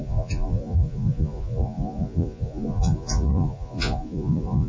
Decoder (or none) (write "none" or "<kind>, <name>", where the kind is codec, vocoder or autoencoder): vocoder, Vocos